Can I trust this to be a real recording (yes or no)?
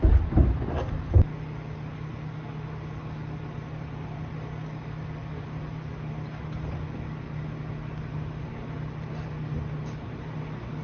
yes